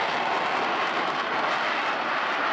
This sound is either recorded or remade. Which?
recorded